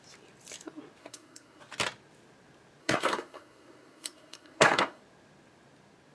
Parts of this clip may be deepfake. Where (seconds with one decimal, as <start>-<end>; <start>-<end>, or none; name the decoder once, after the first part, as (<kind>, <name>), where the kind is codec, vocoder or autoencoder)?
1.0-1.6 (codec, SNAC); 2.8-5.0